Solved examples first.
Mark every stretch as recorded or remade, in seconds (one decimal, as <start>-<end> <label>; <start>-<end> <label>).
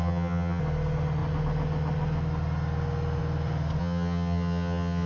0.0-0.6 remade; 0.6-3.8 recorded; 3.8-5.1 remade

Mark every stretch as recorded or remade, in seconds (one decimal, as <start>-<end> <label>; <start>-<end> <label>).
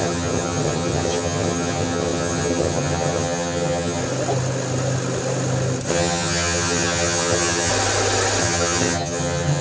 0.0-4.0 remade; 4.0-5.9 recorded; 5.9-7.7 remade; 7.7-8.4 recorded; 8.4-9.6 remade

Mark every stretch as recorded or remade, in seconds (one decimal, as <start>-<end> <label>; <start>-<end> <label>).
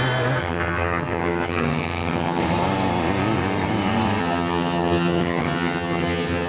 0.0-0.4 recorded; 0.4-2.4 remade; 2.4-4.2 recorded; 4.2-6.5 remade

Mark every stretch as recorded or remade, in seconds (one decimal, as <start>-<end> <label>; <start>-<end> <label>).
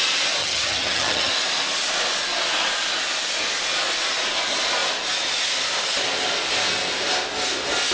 0.0-0.4 recorded; 0.4-1.3 remade; 1.3-7.9 recorded